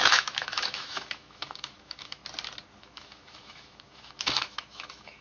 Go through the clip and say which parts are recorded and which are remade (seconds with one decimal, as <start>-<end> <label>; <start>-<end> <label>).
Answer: 0.0-2.2 remade; 2.2-2.8 recorded; 2.8-5.2 remade